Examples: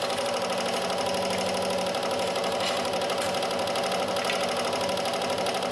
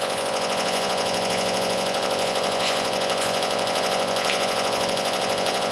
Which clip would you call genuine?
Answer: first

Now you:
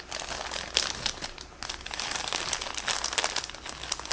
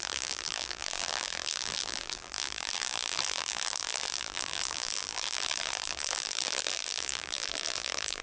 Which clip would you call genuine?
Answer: first